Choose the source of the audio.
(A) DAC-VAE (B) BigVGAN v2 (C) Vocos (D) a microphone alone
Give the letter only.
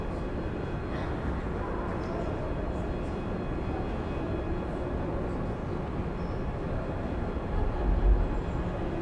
D